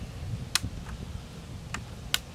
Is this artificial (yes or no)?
no